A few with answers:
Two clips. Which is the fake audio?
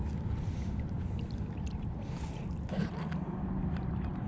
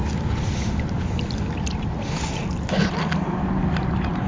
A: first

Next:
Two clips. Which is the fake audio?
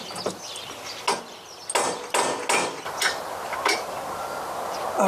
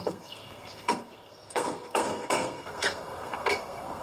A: second